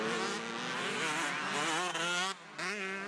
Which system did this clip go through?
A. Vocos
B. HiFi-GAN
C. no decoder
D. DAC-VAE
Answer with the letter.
C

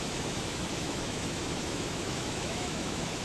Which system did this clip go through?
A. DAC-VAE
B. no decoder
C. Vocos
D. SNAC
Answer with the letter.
A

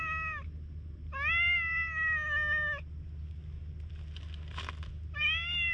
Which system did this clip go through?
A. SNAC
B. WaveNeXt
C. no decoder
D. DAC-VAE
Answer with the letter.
C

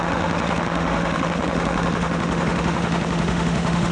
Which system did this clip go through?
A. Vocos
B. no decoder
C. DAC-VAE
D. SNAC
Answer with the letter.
C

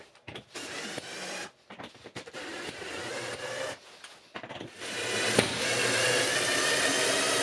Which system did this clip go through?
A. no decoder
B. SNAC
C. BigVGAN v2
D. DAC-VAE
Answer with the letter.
A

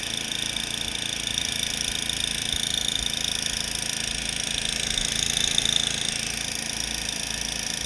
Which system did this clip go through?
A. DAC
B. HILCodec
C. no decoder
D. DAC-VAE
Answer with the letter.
C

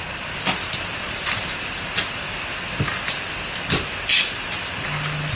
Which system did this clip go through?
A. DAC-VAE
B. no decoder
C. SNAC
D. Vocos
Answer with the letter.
B